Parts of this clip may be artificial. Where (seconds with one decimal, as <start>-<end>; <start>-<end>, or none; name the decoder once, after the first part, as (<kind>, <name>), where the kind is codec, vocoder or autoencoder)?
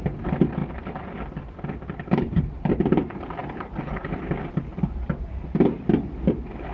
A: none